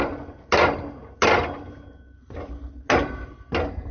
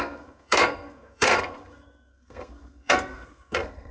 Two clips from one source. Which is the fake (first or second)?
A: second